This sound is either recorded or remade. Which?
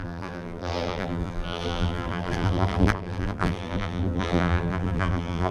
remade